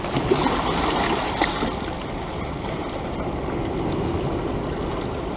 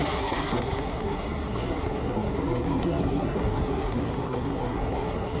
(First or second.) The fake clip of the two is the second